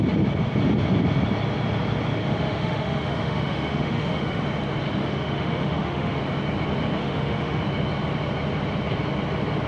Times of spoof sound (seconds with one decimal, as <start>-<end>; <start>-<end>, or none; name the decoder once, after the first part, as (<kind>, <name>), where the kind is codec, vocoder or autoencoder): 2.2-4.4 (autoencoder, DAC-VAE); 5.0-6.2; 7.0-7.6